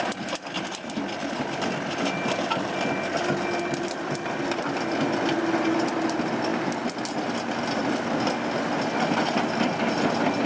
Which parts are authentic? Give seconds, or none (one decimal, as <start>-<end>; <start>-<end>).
0.0-10.5